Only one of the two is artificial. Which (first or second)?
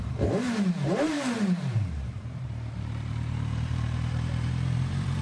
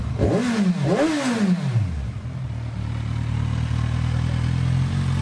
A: first